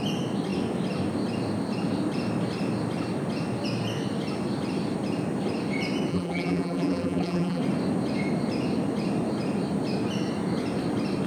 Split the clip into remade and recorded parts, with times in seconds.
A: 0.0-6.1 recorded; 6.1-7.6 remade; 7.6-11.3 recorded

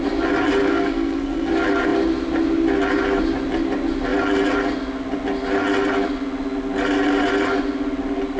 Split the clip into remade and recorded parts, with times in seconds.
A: 0.0-0.6 recorded; 0.6-1.5 remade; 1.5-8.4 recorded

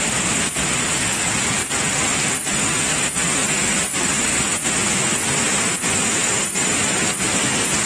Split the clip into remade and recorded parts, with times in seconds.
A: 0.0-7.9 recorded

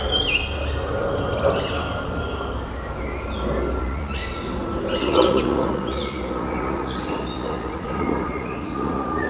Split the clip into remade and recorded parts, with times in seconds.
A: 0.0-3.8 recorded; 3.8-4.2 remade; 4.2-5.0 recorded; 5.0-9.3 remade

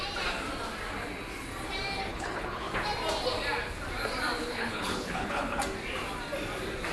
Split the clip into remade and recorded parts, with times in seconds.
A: 0.0-2.1 recorded; 2.1-2.7 remade; 2.7-4.4 recorded; 4.4-5.6 remade; 5.6-6.9 recorded

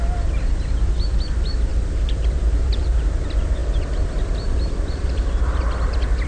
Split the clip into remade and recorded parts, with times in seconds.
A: 0.0-1.7 recorded; 1.7-3.2 remade; 3.2-6.3 recorded

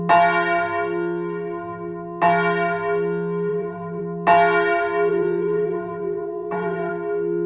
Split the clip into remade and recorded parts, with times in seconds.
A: 0.0-3.5 recorded; 3.5-4.0 remade; 4.0-5.1 recorded; 5.1-6.9 remade; 6.9-7.5 recorded

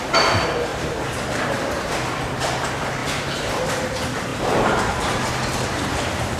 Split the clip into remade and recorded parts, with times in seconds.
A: 0.0-0.7 recorded; 0.7-1.7 remade; 1.7-3.0 recorded; 3.0-3.6 remade; 3.6-4.3 recorded; 4.3-5.3 remade; 5.3-6.4 recorded